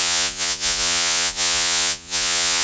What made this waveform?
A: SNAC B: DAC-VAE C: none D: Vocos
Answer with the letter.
D